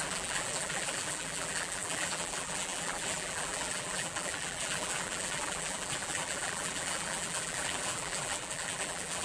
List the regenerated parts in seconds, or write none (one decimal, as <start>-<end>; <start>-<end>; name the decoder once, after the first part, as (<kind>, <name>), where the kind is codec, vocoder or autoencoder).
0.0-9.2 (vocoder, BigVGAN v2)